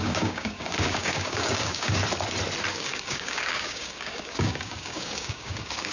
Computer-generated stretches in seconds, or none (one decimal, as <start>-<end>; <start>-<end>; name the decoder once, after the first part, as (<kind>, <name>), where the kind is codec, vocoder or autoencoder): 0.0-2.0 (codec, DAC); 2.7-5.9